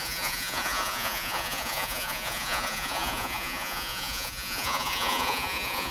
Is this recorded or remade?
remade